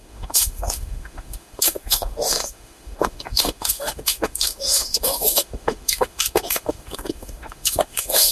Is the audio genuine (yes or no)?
no